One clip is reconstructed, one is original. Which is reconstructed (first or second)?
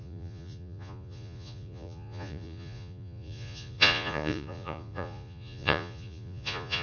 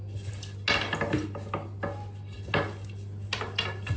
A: first